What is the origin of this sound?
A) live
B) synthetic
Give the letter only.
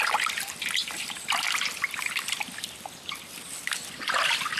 A